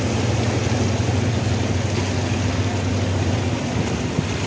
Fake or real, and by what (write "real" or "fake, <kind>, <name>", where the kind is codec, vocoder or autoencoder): real